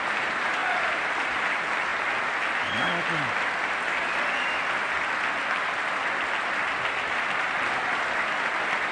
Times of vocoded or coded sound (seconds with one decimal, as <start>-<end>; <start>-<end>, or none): none